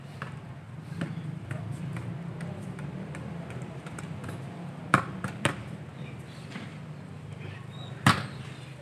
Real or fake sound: fake